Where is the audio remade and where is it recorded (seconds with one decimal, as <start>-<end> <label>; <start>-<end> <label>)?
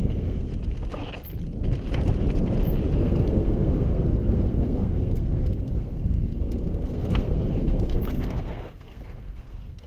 0.0-0.5 remade; 0.5-3.0 recorded; 3.0-9.9 remade